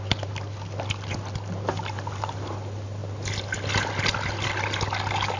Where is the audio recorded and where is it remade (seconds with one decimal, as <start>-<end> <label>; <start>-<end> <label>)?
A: 0.0-5.4 recorded